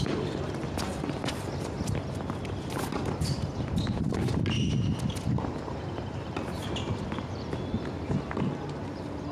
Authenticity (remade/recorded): recorded